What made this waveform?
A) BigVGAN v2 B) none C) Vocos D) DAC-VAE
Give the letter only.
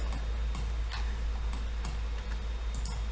B